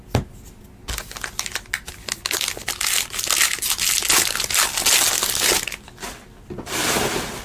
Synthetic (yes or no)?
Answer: no